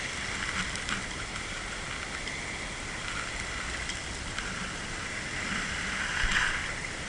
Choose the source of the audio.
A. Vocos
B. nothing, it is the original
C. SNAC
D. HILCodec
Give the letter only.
B